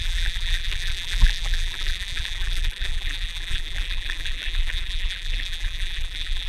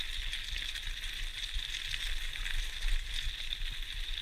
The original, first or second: second